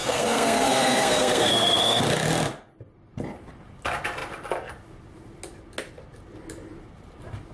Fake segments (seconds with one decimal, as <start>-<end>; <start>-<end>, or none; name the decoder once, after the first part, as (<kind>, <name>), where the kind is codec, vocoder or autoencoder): 0.0-2.0 (codec, SNAC)